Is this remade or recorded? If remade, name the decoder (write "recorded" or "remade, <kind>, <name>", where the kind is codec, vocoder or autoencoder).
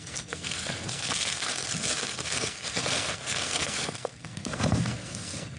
remade, codec, SNAC